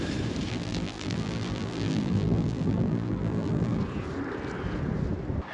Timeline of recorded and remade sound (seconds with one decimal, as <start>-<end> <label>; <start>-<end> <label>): 0.0-0.5 recorded; 0.5-3.8 remade; 3.8-5.5 recorded